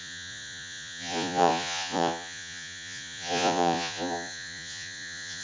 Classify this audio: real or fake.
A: fake